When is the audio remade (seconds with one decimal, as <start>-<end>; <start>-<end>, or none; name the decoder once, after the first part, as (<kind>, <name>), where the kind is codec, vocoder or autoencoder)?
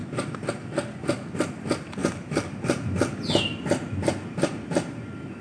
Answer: none